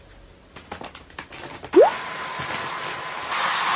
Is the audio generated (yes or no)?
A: no